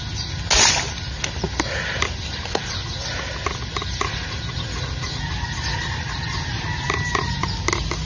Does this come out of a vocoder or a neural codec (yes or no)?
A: no